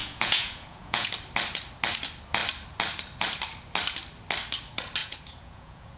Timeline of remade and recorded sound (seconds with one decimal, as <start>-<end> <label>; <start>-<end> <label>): 0.0-1.1 remade; 1.1-5.0 recorded; 5.0-6.0 remade